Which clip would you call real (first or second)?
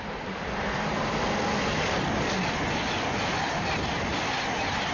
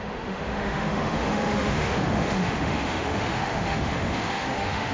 first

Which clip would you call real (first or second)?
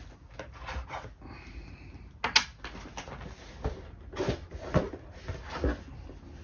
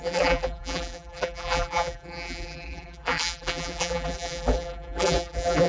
first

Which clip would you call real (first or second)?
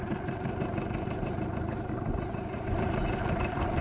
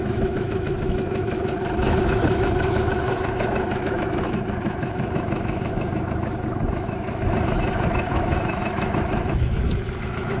first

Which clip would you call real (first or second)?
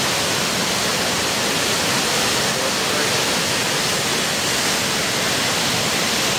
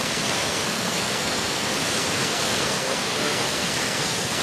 first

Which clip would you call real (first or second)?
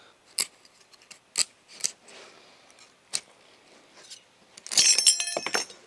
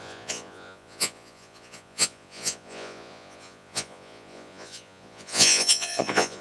first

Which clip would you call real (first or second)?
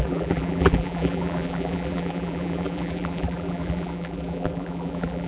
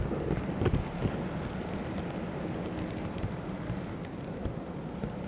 second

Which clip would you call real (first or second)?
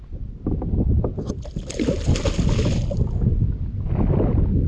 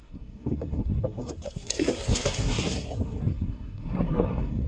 first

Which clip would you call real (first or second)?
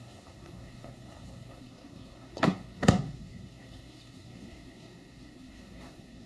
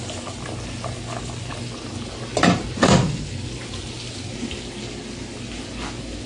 second